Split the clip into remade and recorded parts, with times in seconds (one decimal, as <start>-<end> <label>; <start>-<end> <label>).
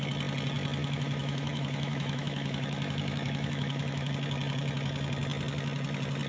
0.0-0.8 recorded; 0.8-4.1 remade; 4.1-6.3 recorded